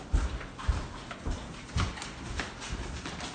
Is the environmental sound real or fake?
real